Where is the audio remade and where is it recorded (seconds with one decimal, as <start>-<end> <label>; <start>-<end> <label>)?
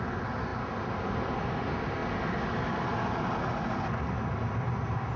0.0-5.2 recorded